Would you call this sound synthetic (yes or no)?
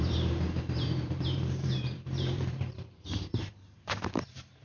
yes